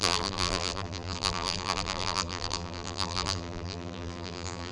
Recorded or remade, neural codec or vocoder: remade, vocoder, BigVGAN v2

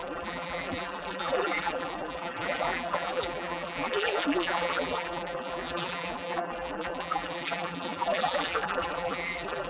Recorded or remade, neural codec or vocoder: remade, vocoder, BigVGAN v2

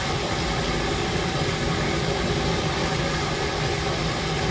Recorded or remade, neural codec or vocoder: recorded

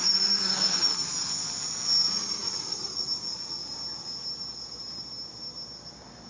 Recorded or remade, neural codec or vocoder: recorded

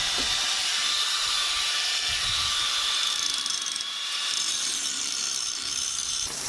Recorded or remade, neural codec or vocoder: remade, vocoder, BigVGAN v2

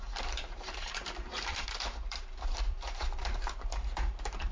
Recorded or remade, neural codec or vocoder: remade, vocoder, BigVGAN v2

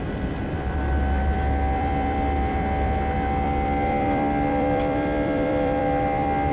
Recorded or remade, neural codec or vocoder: remade, vocoder, BigVGAN v2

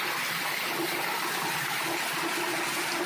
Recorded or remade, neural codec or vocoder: recorded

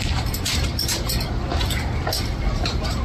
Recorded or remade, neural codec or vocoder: remade, vocoder, BigVGAN v2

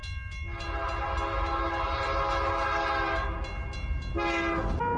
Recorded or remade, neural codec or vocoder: recorded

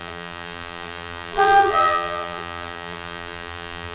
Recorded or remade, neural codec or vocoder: remade, vocoder, BigVGAN v2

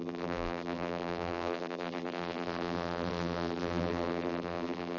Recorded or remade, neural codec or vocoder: remade, vocoder, BigVGAN v2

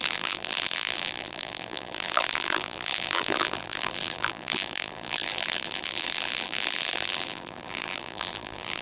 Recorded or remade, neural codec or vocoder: remade, vocoder, BigVGAN v2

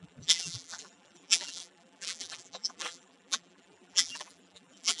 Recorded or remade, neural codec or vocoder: remade, vocoder, BigVGAN v2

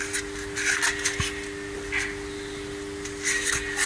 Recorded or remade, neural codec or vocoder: recorded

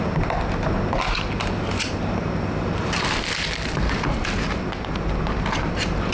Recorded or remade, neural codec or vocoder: recorded